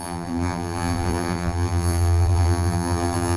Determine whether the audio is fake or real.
fake